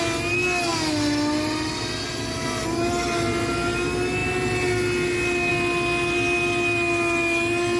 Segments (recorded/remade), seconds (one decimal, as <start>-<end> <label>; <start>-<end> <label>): 0.0-7.8 recorded